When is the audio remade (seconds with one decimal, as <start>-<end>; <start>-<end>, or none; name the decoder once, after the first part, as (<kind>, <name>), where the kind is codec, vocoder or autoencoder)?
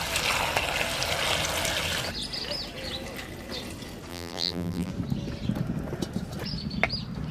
4.1-4.9 (vocoder, BigVGAN v2)